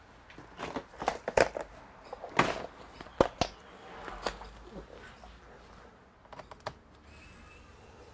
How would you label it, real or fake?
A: real